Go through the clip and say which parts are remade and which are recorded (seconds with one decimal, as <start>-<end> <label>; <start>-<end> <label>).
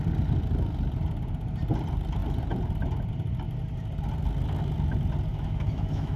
0.0-5.3 recorded; 5.3-6.2 remade